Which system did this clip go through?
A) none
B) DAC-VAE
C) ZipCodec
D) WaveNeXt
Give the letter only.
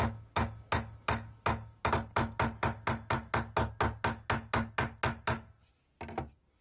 A